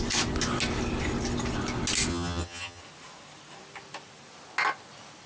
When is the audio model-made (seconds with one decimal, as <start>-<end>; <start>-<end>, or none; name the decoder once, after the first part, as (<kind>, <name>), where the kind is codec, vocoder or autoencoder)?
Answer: 2.1-2.8 (vocoder, HiFi-GAN)